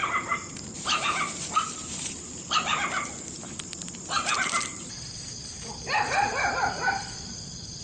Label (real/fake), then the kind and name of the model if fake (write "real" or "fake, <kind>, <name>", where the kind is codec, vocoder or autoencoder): fake, vocoder, BigVGAN v2